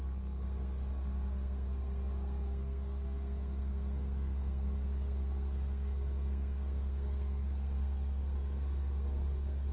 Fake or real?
fake